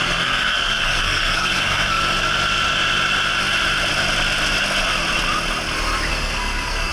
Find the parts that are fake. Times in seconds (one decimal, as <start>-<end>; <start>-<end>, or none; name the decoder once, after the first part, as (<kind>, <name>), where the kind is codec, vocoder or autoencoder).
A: 0.0-2.0 (codec, SNAC); 6.1-6.9